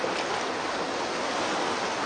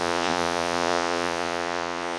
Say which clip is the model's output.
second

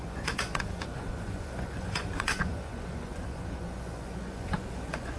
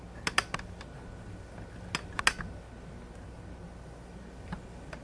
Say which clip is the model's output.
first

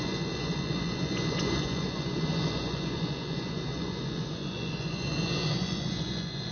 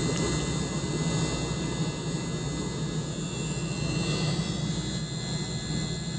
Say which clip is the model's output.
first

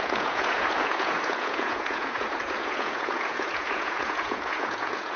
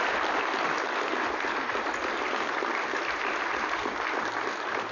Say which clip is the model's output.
first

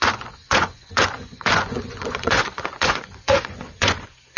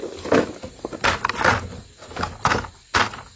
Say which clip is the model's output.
first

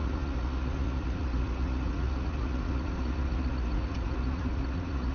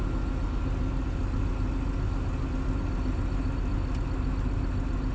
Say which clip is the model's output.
first